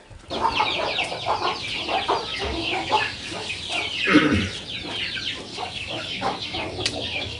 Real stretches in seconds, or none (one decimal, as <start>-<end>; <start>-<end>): 0.0-2.3; 3.6-5.5